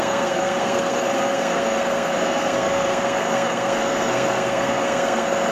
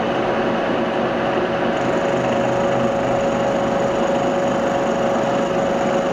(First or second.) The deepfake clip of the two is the first